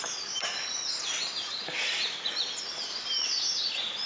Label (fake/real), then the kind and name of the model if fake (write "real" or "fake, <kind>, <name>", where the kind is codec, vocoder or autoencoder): real